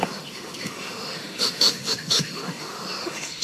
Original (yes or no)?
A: no